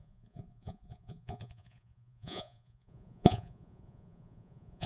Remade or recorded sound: remade